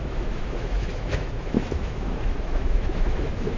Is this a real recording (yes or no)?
no